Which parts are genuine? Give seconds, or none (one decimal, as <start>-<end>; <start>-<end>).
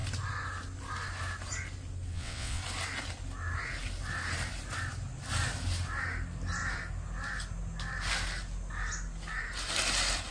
0.0-2.1; 2.6-10.3